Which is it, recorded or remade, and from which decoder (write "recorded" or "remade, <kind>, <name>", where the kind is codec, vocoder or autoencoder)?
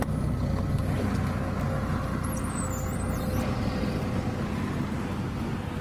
recorded